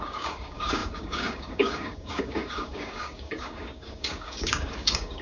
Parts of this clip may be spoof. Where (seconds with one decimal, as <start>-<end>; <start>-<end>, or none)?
0.0-5.2